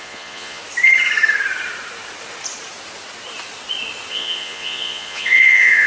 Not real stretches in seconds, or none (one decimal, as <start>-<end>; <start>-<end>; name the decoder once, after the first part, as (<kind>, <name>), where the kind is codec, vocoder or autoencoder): 0.0-0.6 (vocoder, Vocos); 4.1-5.9